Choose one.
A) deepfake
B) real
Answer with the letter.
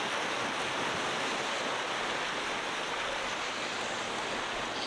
B